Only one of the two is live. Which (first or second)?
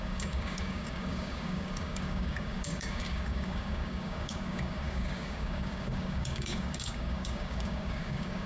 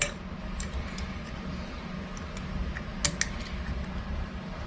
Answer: second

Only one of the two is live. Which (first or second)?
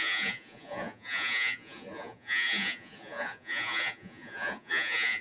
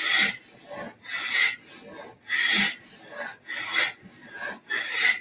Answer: second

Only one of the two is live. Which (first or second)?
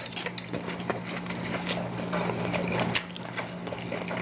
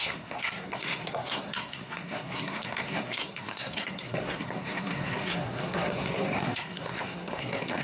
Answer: first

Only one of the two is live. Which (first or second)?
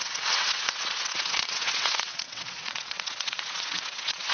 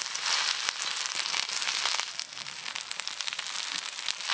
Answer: second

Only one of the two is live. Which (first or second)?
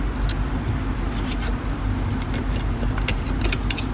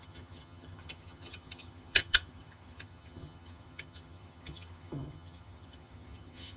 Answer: first